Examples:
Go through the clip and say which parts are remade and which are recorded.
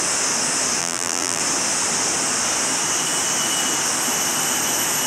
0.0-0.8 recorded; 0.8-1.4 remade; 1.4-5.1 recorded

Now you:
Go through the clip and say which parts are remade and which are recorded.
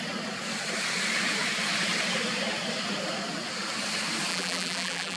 0.0-4.3 recorded; 4.3-5.2 remade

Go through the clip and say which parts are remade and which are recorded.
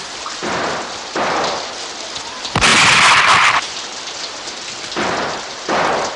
0.0-6.2 recorded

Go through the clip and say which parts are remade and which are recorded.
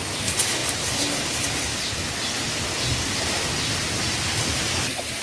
0.0-5.2 recorded